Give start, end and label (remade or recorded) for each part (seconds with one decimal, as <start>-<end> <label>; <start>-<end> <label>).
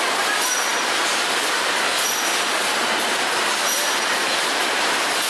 0.0-5.3 recorded